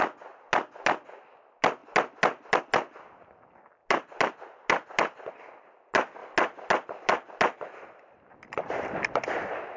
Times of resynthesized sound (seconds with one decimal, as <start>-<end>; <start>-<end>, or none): none

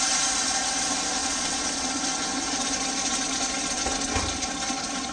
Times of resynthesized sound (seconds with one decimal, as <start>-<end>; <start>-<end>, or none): 1.2-1.9